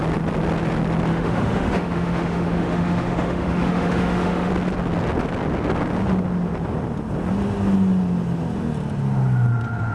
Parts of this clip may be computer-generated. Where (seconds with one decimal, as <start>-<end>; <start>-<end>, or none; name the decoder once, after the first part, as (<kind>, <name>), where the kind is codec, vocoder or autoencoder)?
1.1-4.5 (autoencoder, DAC-VAE)

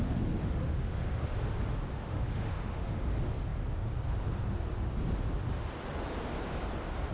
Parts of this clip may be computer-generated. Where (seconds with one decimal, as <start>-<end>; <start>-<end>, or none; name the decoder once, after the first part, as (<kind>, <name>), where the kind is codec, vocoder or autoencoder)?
0.4-1.4 (autoencoder, DAC-VAE); 1.9-3.1

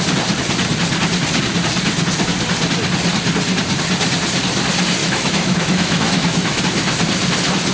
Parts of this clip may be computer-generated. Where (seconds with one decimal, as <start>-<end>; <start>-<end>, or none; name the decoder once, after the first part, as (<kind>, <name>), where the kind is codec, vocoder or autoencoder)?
5.0-6.6 (autoencoder, DAC-VAE)

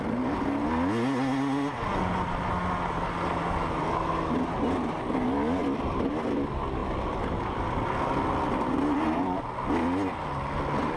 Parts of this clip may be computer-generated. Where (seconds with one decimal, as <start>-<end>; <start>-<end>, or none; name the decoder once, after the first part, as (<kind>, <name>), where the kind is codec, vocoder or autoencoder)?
none

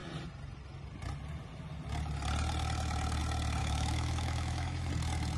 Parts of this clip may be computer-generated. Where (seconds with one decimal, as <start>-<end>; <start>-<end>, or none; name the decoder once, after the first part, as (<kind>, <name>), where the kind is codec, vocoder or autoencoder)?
3.6-4.9 (autoencoder, DAC-VAE)

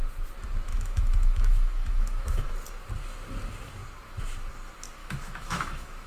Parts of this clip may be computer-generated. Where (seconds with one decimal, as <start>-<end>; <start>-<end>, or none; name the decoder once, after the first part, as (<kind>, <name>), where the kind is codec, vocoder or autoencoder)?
0.7-2.5 (autoencoder, DAC-VAE); 5.0-6.1

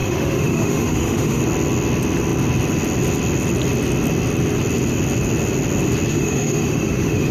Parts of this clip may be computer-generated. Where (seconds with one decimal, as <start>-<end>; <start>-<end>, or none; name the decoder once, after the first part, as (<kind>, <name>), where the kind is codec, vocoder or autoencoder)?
0.0-1.4 (autoencoder, DAC-VAE); 6.1-7.3